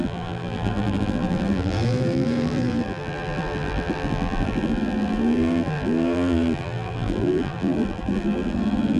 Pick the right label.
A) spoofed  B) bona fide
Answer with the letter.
A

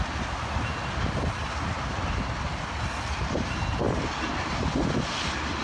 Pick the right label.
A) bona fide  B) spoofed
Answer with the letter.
A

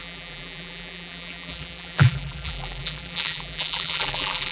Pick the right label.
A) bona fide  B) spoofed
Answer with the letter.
B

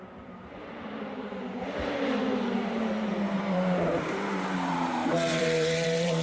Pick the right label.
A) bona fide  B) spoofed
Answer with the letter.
B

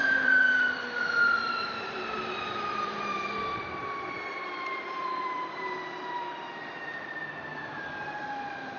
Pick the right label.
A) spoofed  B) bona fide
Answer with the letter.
A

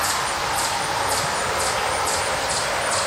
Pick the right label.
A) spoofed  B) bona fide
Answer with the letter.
A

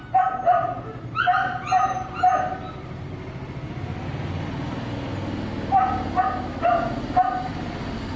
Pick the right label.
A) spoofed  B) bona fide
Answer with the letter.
B